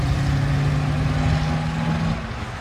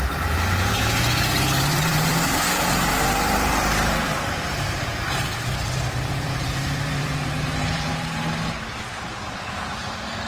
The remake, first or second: second